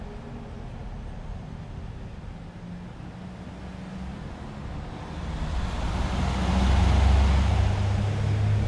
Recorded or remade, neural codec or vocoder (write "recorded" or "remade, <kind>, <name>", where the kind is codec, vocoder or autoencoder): recorded